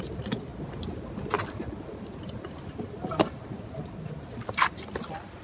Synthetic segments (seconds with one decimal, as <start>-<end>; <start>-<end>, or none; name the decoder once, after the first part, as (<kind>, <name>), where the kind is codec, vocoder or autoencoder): none